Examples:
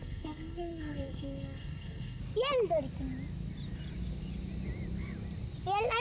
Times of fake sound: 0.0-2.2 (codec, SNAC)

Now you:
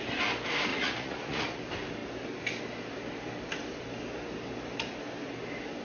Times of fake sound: 0.7-1.6 (vocoder, Vocos)

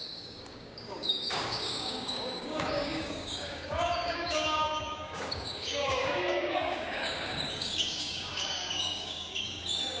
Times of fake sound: 0.0-10.0 (codec, DAC)

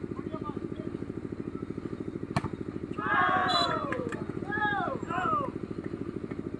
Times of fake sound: 3.4-4.4 (vocoder, Vocos)

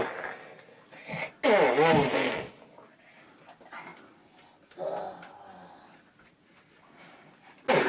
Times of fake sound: none

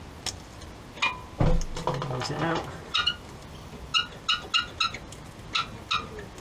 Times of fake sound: none

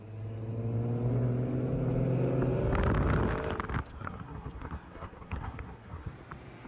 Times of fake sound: 3.9-6.1 (codec, SNAC)

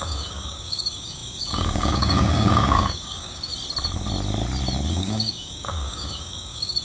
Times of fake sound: 0.0-3.5 (codec, DAC); 4.9-6.8